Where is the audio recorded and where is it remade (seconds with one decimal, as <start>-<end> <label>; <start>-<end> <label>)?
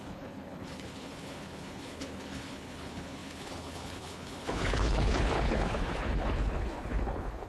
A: 0.0-7.5 remade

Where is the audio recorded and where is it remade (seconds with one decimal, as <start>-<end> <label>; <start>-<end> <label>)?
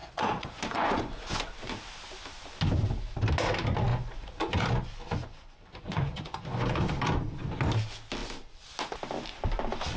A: 0.0-1.5 remade; 1.5-3.9 recorded; 3.9-6.8 remade; 6.8-10.0 recorded